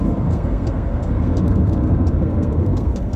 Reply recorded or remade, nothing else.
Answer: remade